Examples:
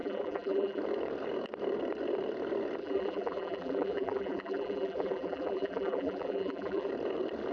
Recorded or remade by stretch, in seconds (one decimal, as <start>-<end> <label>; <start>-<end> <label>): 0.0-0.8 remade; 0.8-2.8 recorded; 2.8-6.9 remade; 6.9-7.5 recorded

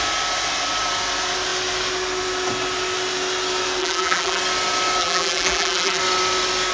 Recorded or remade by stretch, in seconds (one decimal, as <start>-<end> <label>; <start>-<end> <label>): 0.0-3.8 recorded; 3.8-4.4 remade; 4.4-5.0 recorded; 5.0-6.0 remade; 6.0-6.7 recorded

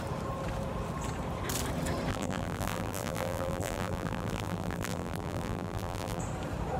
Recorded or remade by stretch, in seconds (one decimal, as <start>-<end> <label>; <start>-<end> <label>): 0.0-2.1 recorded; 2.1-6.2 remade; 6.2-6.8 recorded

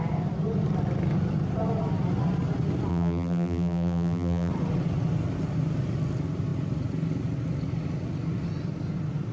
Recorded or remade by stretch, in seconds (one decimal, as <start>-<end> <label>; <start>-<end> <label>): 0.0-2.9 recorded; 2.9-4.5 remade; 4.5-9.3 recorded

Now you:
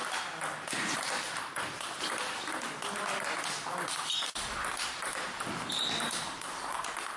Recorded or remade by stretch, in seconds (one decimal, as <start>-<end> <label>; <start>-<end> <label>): 0.0-7.2 recorded

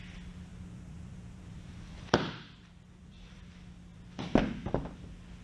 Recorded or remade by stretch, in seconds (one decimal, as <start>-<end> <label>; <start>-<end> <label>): 0.0-0.5 recorded; 0.5-3.5 remade; 3.5-5.4 recorded

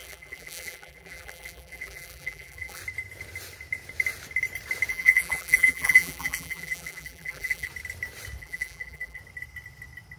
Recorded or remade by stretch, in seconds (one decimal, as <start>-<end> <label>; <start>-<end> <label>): 0.0-2.8 remade; 2.8-4.9 recorded; 4.9-7.7 remade; 7.7-8.4 recorded; 8.4-9.2 remade; 9.2-10.2 recorded